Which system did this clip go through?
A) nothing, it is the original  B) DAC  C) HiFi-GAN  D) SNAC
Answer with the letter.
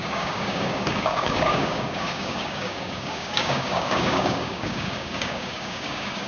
B